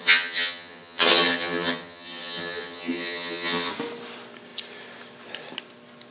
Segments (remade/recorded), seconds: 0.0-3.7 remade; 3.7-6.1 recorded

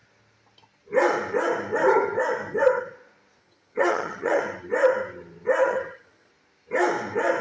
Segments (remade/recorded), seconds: 0.0-3.4 recorded; 3.4-4.4 remade; 4.4-5.6 recorded; 5.6-6.3 remade; 6.3-7.4 recorded

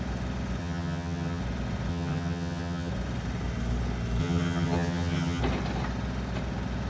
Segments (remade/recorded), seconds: 0.0-0.6 recorded; 0.6-1.4 remade; 1.4-1.9 recorded; 1.9-2.9 remade; 2.9-4.2 recorded; 4.2-5.4 remade; 5.4-6.9 recorded